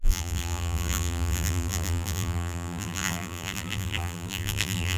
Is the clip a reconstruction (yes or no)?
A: yes